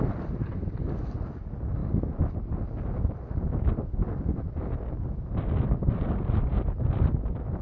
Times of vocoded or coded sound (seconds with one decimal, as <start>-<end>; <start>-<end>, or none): none